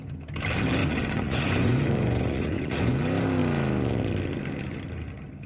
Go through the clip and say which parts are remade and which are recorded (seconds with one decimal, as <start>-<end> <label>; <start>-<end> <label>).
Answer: 0.0-0.8 recorded; 0.8-3.0 remade; 3.0-5.5 recorded

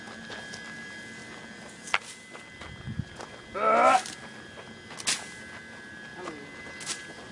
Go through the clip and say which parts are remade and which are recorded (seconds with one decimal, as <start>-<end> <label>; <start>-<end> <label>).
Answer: 0.0-7.3 recorded

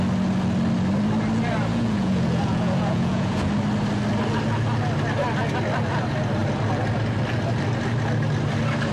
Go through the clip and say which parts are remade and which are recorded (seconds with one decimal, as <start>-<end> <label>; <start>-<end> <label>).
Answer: 0.0-1.7 recorded; 1.7-3.5 remade; 3.5-8.9 recorded

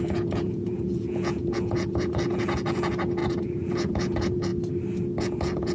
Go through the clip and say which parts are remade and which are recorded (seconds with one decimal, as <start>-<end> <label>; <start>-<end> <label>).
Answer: 0.0-4.5 remade; 4.5-5.2 recorded; 5.2-5.7 remade

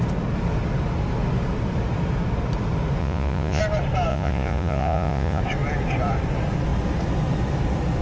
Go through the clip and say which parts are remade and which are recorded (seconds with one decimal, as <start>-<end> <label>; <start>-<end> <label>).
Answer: 0.0-3.0 recorded; 3.0-3.6 remade; 3.6-4.1 recorded; 4.1-5.4 remade; 5.4-8.0 recorded

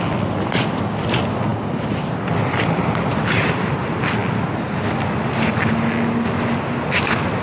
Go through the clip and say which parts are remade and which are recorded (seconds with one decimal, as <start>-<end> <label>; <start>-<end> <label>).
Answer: 0.0-7.4 recorded

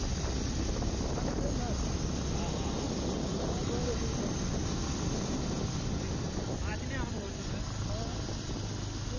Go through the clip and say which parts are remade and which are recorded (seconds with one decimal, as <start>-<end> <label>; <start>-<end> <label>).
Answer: 0.0-9.2 recorded